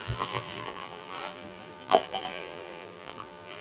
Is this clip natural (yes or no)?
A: no